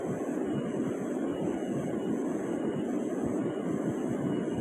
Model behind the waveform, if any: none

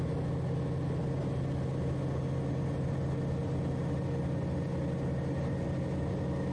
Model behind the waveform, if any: none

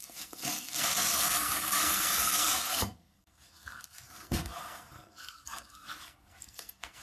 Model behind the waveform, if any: codec, SNAC